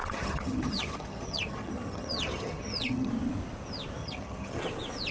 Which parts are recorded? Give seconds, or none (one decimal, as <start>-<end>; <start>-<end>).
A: 3.1-4.0; 4.6-5.1